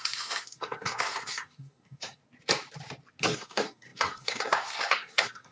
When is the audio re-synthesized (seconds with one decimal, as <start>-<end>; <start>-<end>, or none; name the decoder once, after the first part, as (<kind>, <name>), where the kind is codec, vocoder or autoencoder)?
0.0-2.2 (codec, SNAC); 3.2-5.5